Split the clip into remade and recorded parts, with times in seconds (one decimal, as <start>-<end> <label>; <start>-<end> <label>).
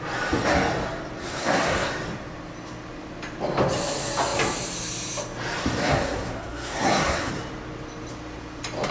0.0-1.2 recorded; 1.2-1.9 remade; 1.9-5.8 recorded; 5.8-7.3 remade; 7.3-8.9 recorded